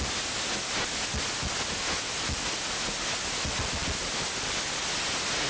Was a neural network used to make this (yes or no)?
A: no